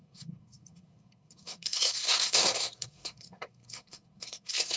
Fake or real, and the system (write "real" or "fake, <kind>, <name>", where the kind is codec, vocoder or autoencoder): fake, codec, SNAC